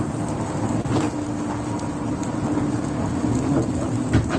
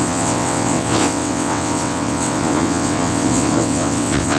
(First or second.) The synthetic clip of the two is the second